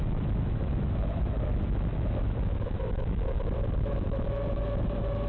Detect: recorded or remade remade